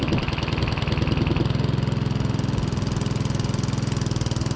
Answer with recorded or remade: recorded